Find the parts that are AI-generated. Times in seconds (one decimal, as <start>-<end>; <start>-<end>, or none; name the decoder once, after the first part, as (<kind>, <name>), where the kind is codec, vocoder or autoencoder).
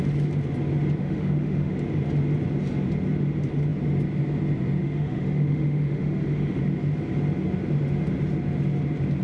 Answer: 1.0-1.7 (autoencoder, DAC-VAE); 4.8-6.6